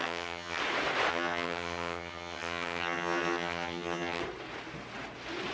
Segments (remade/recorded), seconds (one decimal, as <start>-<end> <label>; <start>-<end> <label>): 0.0-0.6 remade; 0.6-1.1 recorded; 1.1-4.2 remade; 4.2-5.5 recorded